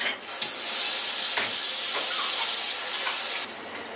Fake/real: real